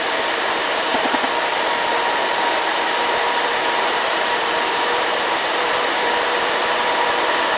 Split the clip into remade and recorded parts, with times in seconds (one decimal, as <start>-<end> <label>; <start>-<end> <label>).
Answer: 0.0-0.6 recorded; 0.6-1.2 remade; 1.2-2.7 recorded; 2.7-7.6 remade